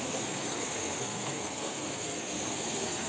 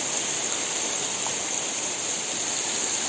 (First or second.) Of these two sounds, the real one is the second